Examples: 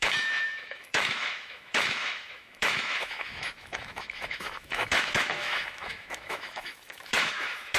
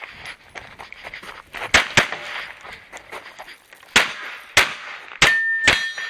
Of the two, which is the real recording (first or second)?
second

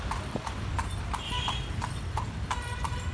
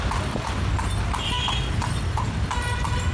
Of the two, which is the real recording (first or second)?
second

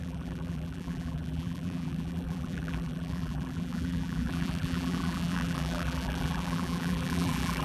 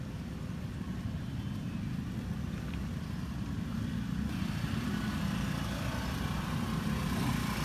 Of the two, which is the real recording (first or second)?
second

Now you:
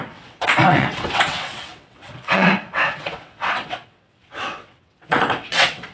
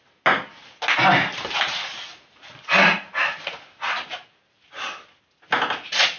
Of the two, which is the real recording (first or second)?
second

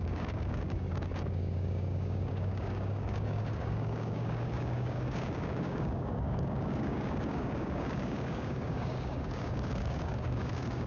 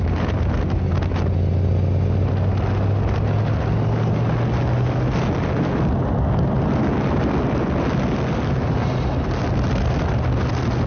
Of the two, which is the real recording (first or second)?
second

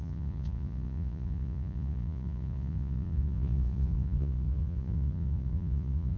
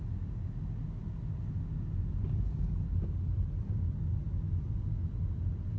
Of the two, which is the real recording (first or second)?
second